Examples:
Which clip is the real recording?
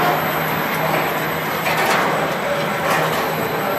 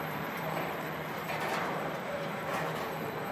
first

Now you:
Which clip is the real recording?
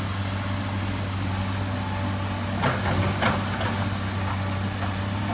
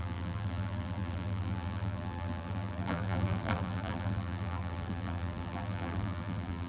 first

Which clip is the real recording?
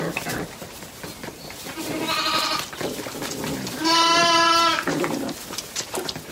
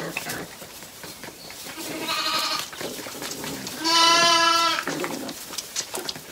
first